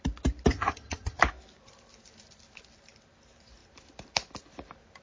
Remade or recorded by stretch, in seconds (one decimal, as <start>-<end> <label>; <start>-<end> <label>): 0.0-0.5 recorded; 0.5-1.2 remade; 1.2-5.0 recorded